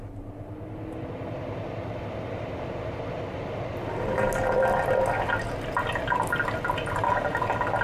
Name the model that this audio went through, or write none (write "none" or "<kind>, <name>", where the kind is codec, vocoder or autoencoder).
none